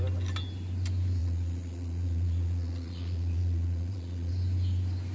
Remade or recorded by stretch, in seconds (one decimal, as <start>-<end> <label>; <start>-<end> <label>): 0.0-1.2 recorded; 1.2-4.3 remade; 4.3-5.1 recorded